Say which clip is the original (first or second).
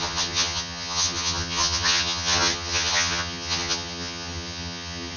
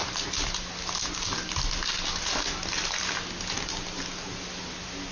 second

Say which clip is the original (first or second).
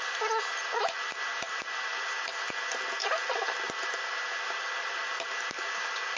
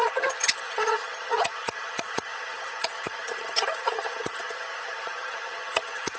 first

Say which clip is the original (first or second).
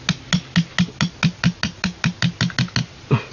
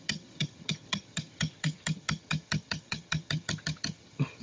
first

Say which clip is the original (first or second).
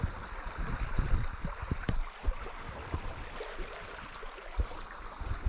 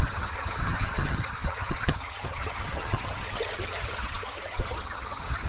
first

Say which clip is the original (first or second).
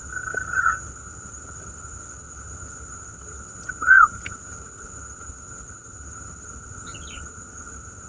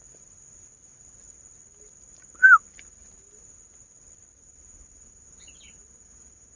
second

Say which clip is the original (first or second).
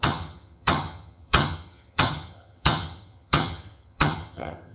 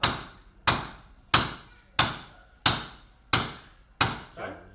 second